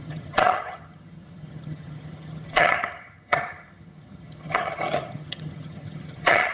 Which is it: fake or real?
fake